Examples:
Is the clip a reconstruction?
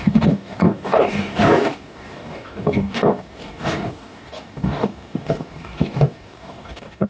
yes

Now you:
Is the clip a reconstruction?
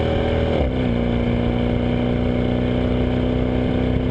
no